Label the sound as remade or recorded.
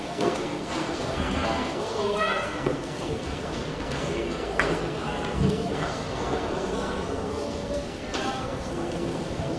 remade